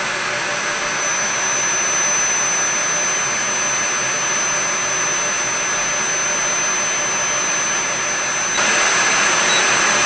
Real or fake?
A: real